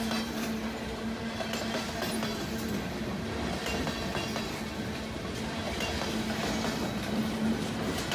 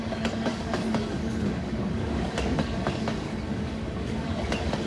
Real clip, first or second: first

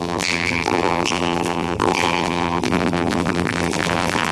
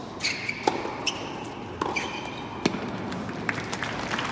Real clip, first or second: second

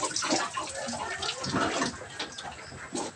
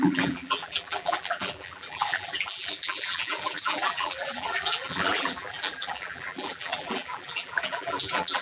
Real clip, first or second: first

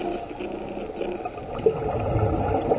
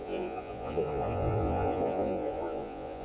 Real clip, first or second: first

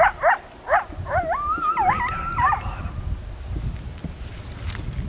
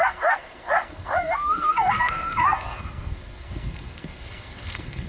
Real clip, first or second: first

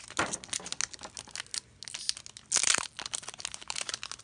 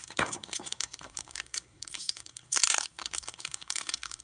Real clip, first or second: first